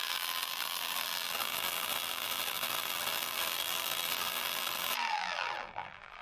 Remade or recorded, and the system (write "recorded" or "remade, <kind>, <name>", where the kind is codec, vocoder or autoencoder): remade, vocoder, BigVGAN v2